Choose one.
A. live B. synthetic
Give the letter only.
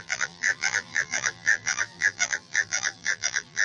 B